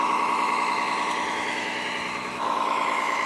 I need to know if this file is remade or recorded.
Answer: remade